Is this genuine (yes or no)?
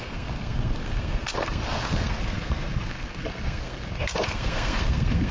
no